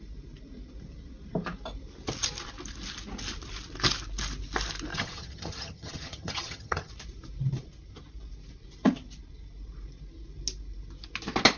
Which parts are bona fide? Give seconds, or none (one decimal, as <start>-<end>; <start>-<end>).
0.0-4.9; 6.9-11.6